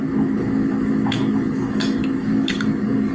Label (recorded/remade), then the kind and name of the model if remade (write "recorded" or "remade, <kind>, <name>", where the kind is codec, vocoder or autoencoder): remade, autoencoder, DAC-VAE